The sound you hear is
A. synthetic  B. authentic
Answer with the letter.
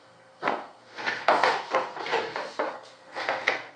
A